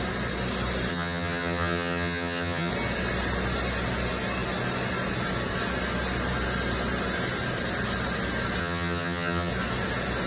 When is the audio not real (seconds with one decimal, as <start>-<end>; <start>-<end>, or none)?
0.9-2.7; 8.6-9.5